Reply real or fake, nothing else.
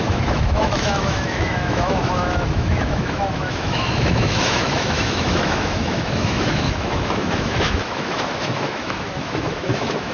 fake